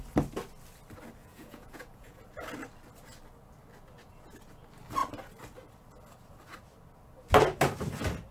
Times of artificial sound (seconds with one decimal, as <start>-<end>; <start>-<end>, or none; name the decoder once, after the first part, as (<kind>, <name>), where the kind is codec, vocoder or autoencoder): 1.2-2.2 (vocoder, Vocos)

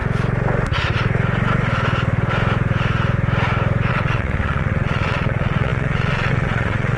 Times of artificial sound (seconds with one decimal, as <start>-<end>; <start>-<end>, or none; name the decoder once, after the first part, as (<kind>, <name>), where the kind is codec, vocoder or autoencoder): 3.9-7.0 (vocoder, WaveNeXt)

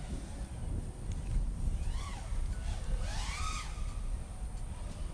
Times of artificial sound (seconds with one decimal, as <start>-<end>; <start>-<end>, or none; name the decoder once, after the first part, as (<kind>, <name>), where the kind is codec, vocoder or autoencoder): none

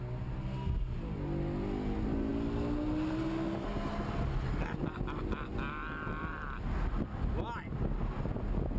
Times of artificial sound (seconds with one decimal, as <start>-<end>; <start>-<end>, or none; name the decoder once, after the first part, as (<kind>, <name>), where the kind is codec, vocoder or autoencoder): none

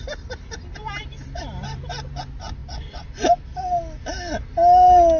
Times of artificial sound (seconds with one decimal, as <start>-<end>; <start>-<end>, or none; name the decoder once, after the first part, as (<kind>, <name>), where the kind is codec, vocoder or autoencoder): 1.0-2.2 (vocoder, BigVGAN v2); 2.6-3.6